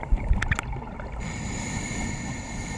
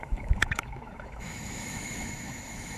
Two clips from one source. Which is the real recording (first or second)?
first